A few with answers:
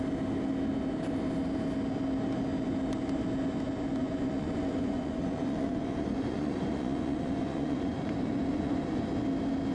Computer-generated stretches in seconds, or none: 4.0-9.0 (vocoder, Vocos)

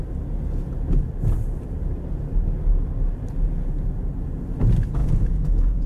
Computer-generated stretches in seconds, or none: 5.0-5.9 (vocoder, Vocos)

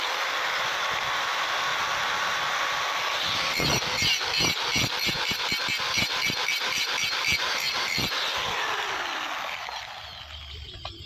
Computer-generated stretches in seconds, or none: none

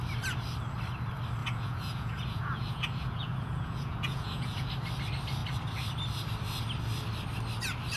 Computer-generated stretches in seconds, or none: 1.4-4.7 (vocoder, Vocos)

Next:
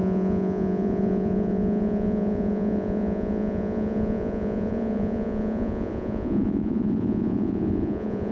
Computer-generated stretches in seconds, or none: 0.0-8.3 (vocoder, Vocos)

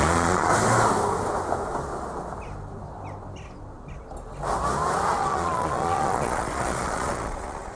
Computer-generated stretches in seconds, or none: 0.0-0.5 (vocoder, Vocos); 5.2-7.8